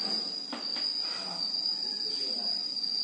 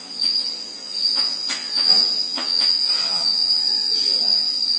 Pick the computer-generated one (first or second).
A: second